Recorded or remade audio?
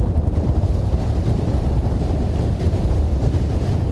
remade